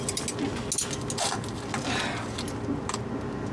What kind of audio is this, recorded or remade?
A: recorded